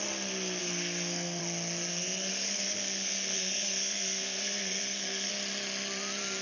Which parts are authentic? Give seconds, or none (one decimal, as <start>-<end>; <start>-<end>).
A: 0.0-0.6; 1.4-1.9; 5.3-6.4

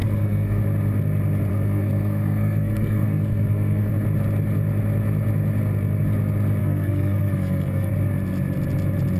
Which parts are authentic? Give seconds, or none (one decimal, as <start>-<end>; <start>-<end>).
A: 0.6-1.5; 3.9-6.6; 7.9-9.2

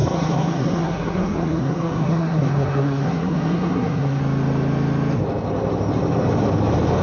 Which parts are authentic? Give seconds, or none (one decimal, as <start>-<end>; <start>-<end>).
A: 4.2-7.0

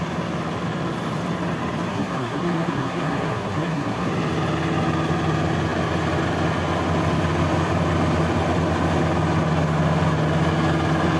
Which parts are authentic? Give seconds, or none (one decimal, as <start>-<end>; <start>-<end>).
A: 0.0-1.9; 4.1-11.2